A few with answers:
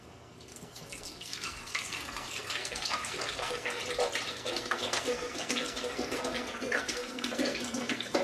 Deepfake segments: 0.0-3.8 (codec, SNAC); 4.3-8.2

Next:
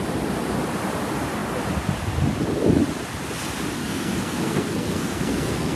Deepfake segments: 3.8-5.8 (codec, SNAC)

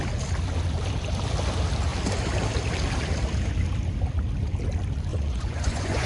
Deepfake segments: 5.1-6.1 (vocoder, Vocos)

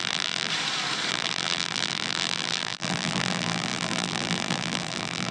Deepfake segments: 0.0-0.5 (vocoder, BigVGAN v2); 1.1-5.3

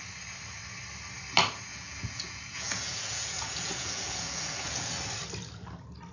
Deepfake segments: 1.7-5.1 (vocoder, Vocos)

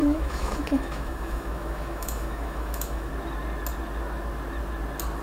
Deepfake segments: 0.0-3.1 (autoencoder, DAC-VAE)

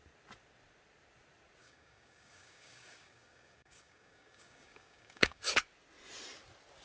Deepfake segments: 1.6-5.5 (codec, DAC)

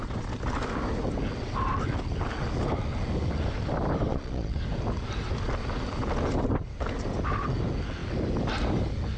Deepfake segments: 4.1-4.6 (vocoder, Vocos)